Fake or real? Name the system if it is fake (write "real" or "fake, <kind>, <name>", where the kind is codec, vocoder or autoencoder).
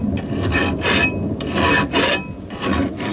real